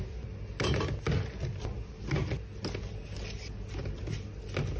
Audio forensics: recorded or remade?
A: recorded